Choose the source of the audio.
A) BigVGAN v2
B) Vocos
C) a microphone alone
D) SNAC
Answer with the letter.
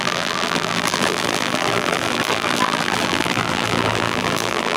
A